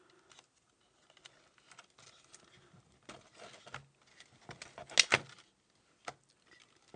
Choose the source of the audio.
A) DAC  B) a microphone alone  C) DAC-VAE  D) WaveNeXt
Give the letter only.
B